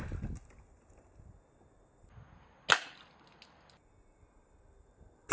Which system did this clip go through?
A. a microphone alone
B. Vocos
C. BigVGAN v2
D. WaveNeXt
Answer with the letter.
A